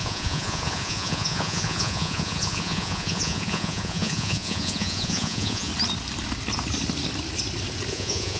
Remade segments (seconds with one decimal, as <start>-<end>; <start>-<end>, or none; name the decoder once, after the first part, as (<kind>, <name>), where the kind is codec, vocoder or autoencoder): 0.0-5.7 (vocoder, Vocos); 7.9-8.4